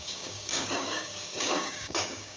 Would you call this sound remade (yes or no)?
yes